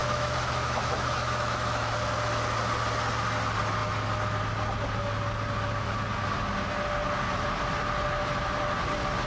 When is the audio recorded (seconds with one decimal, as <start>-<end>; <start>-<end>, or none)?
1.9-9.3